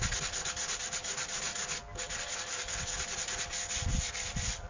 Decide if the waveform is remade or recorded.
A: recorded